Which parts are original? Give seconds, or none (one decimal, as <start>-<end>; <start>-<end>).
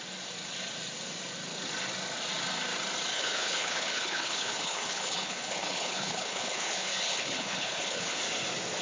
0.0-3.1; 8.2-8.8